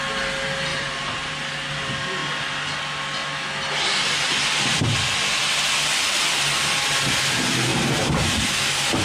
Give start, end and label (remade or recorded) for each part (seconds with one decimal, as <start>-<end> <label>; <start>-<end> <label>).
0.0-0.7 recorded; 0.7-1.4 remade; 1.4-7.7 recorded; 7.7-8.4 remade; 8.4-9.0 recorded